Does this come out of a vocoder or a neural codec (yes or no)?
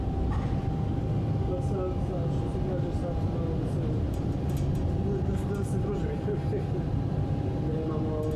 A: no